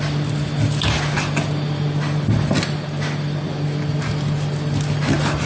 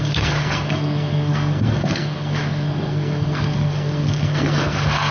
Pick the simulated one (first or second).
second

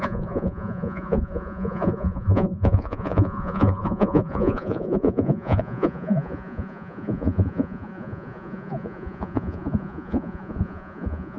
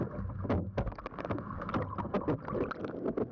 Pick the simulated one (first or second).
first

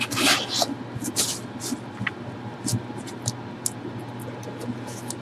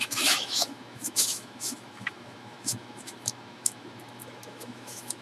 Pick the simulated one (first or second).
second